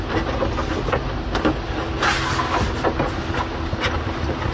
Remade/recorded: recorded